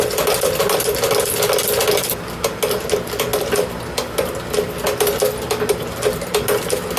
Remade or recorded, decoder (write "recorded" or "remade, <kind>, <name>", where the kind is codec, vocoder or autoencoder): recorded